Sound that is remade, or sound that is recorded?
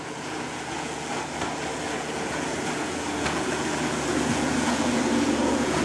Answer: remade